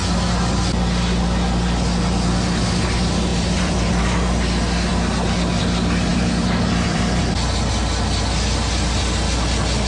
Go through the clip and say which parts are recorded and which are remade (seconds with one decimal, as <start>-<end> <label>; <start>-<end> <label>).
0.0-3.3 recorded; 3.3-3.9 remade; 3.9-6.1 recorded; 6.1-7.2 remade; 7.2-9.9 recorded